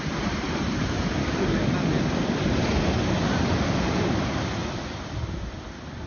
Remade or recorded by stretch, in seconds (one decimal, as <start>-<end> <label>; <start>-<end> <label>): 0.0-1.2 recorded; 1.2-1.7 remade; 1.7-6.1 recorded